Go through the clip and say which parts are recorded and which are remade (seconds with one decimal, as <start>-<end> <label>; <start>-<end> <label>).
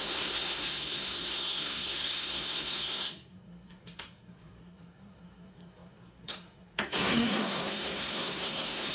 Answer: 0.0-8.9 remade